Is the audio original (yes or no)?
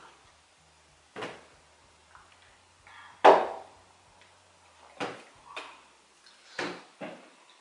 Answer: yes